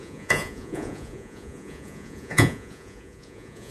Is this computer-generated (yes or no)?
yes